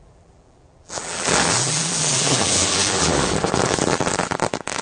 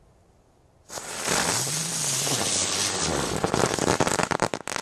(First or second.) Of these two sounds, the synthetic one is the first